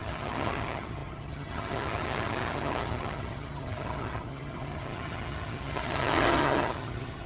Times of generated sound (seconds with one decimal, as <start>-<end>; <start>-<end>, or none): 0.0-7.3